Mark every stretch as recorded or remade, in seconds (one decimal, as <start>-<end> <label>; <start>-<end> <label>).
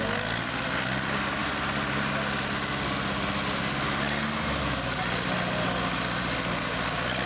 0.0-7.3 recorded